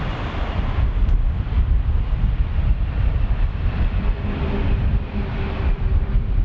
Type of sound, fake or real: fake